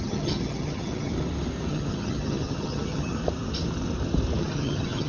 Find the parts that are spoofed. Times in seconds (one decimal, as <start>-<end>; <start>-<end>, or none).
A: 0.0-1.1; 1.7-3.2; 4.4-5.1